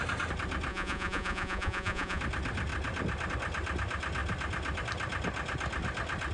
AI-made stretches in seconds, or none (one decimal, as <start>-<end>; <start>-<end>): 0.7-2.2